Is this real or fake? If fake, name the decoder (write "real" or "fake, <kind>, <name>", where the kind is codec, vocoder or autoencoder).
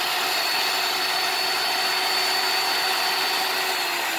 real